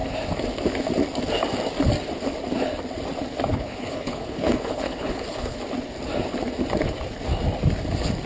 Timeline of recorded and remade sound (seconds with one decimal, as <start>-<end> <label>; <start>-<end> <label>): 0.0-3.5 recorded; 3.5-5.6 remade; 5.6-8.3 recorded